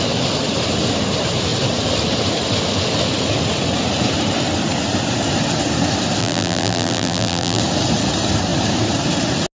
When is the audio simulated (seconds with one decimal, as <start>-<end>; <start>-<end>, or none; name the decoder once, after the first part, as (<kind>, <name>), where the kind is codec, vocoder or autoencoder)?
6.2-7.6 (vocoder, BigVGAN v2)